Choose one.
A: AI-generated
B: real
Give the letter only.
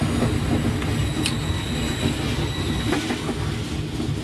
B